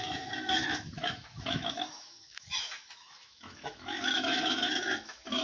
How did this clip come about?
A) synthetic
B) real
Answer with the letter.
A